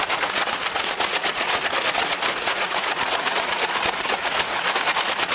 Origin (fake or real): fake